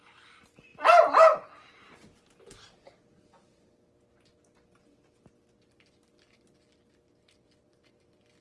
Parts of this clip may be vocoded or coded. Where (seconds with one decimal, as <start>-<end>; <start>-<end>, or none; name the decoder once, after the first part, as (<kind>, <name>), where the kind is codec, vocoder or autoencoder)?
0.7-2.0 (vocoder, BigVGAN v2)